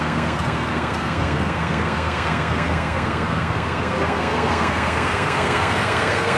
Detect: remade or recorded remade